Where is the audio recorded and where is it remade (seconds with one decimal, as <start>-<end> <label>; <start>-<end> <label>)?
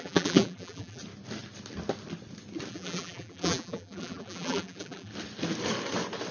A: 0.0-1.0 remade; 1.0-2.7 recorded; 2.7-5.1 remade; 5.1-6.3 recorded